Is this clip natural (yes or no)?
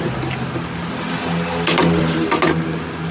yes